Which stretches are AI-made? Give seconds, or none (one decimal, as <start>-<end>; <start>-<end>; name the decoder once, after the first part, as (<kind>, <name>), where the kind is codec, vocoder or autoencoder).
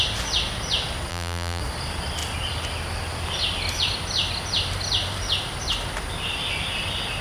1.1-1.6 (vocoder, BigVGAN v2)